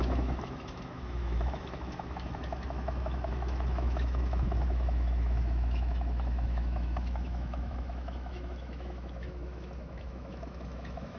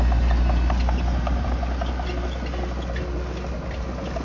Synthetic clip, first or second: first